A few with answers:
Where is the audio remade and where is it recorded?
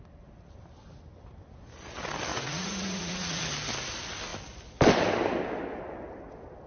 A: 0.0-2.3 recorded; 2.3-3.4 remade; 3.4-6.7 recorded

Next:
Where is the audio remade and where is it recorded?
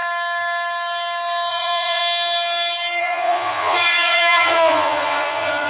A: 0.0-1.5 recorded; 1.5-2.0 remade; 2.0-3.0 recorded; 3.0-5.7 remade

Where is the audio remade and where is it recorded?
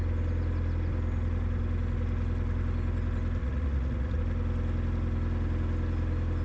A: 0.0-3.4 recorded; 3.4-4.2 remade; 4.2-6.4 recorded